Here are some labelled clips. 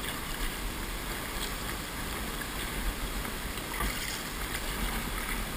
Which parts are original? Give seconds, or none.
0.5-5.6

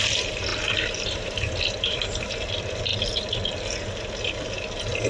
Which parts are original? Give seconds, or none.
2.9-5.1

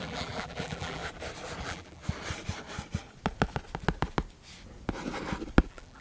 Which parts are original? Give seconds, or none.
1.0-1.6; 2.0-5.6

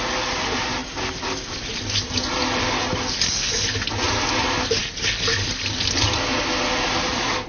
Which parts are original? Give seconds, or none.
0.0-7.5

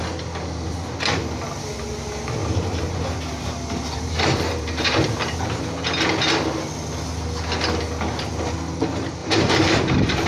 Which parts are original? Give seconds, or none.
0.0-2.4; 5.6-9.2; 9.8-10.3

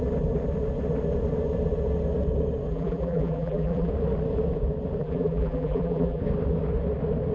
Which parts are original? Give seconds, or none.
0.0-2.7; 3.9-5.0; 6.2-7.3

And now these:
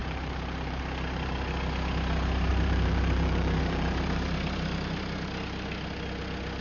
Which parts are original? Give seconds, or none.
0.8-2.5; 4.3-6.6